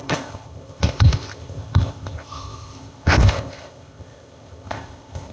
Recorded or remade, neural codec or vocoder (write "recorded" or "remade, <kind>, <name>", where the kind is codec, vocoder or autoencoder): remade, codec, ZipCodec